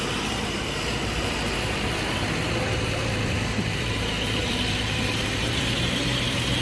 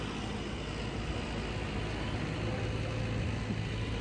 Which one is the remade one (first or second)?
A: first